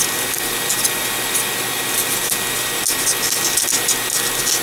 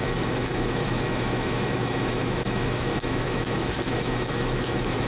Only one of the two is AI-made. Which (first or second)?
second